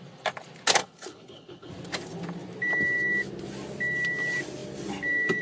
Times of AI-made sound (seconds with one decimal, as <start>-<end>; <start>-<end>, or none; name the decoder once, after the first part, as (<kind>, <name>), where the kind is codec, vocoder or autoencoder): 0.8-1.7 (codec, HILCodec)